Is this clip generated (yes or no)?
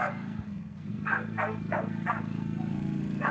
yes